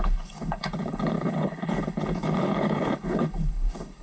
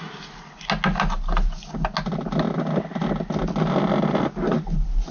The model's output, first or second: first